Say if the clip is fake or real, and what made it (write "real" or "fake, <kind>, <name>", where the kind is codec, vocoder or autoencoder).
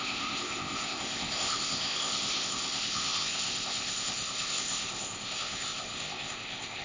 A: fake, codec, ZipCodec